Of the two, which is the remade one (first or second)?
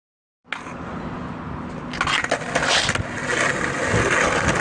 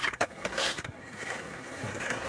second